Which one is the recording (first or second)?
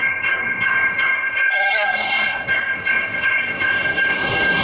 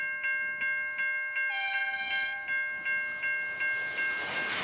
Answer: second